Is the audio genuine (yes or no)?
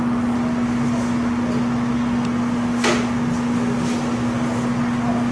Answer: yes